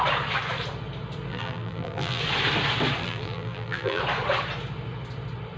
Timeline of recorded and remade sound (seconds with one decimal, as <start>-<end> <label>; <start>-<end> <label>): 0.0-1.3 recorded; 1.3-2.2 remade; 2.2-3.0 recorded; 3.0-4.0 remade; 4.0-5.6 recorded